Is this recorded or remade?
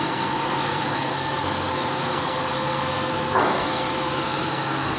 remade